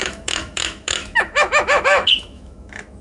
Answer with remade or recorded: remade